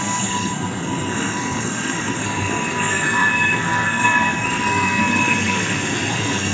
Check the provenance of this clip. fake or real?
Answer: fake